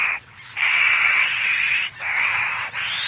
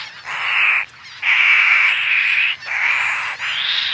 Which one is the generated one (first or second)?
first